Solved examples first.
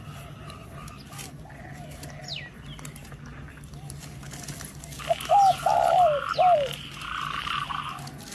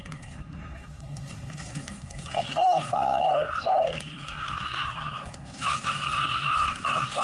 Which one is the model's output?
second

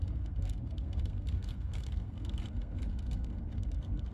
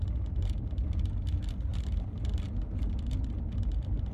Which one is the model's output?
first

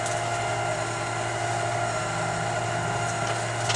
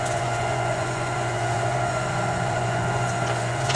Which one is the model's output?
second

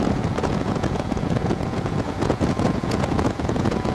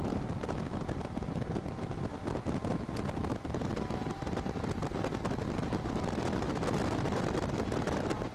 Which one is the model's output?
first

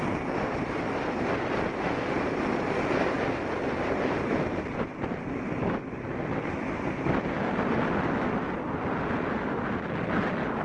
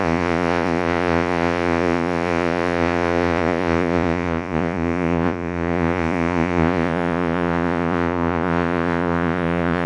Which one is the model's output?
second